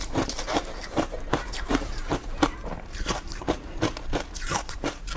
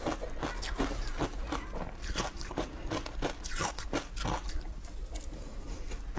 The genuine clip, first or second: second